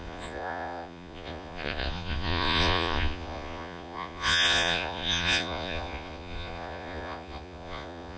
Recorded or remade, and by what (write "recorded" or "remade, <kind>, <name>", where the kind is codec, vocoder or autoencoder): remade, vocoder, Vocos